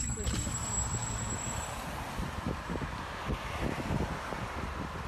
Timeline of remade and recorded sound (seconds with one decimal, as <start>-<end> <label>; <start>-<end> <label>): 0.0-5.1 recorded